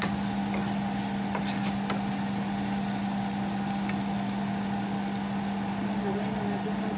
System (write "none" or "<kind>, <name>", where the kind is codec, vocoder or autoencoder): none